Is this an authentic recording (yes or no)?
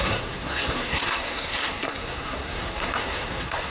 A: no